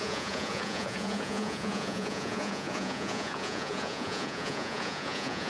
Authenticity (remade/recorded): remade